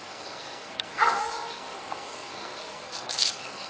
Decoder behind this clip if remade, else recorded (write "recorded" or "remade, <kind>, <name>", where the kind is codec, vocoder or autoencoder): remade, codec, SNAC